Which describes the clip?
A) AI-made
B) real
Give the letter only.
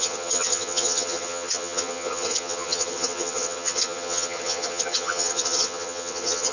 A